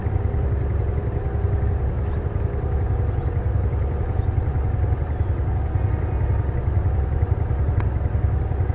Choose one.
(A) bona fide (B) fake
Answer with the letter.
A